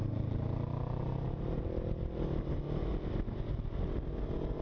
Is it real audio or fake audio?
real